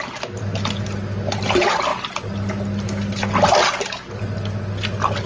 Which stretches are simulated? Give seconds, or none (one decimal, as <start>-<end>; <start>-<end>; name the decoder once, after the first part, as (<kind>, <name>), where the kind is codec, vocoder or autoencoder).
none